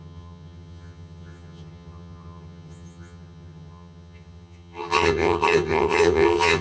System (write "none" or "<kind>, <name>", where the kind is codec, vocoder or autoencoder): vocoder, HiFi-GAN